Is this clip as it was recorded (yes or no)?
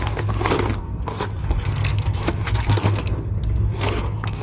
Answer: no